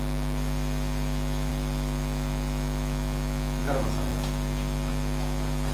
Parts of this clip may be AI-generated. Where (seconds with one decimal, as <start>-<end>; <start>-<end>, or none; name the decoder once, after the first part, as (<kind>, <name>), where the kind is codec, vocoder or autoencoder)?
1.5-3.6 (autoencoder, DAC-VAE)